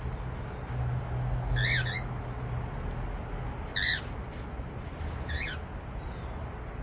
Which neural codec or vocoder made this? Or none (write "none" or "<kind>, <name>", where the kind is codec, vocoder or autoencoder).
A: none